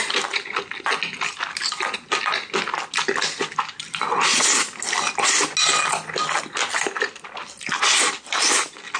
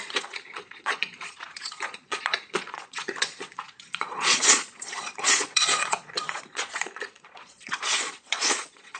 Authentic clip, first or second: first